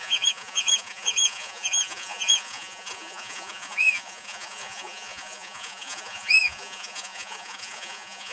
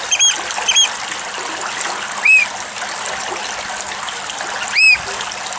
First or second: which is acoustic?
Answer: second